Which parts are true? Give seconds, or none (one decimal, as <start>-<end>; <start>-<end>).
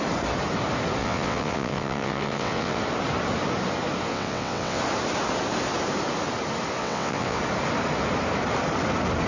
0.0-1.0; 2.8-4.1; 4.8-6.8; 7.4-9.3